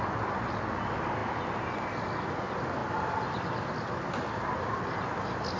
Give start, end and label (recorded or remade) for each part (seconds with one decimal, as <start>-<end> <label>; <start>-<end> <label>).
0.0-5.6 recorded